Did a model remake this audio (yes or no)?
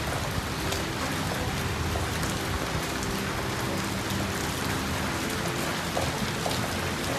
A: no